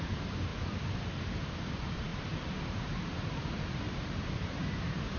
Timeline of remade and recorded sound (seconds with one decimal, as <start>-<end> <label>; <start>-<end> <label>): 0.0-0.5 remade; 0.5-1.3 recorded; 1.3-5.2 remade